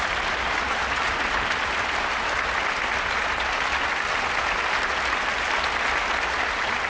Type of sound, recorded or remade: recorded